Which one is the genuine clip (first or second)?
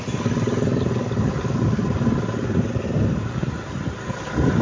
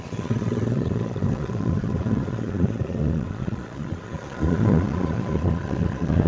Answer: first